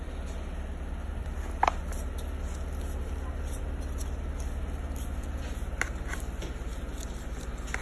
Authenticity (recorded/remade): recorded